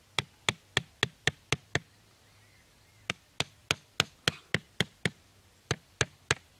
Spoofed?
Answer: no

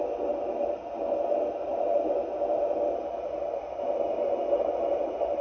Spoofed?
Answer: no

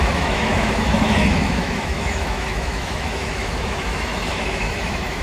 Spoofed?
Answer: yes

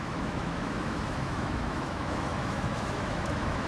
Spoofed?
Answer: yes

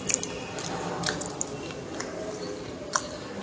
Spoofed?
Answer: no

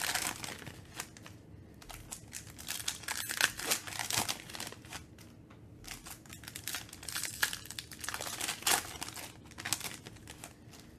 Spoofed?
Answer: no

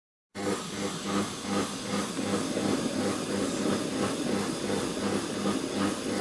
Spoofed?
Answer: no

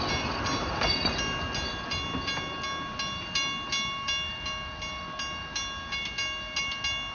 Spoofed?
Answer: no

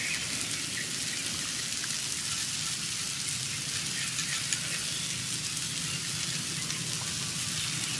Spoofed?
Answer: no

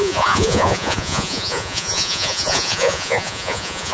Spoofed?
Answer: yes